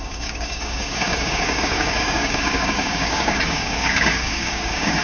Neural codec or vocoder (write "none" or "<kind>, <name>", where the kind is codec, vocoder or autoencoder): codec, DAC